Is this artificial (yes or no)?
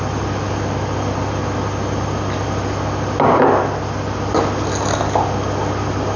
no